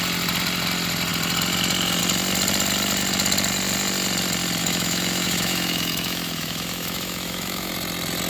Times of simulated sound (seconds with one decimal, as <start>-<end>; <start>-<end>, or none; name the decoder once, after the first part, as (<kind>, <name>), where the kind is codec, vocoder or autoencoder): 4.6-7.7 (autoencoder, DAC-VAE)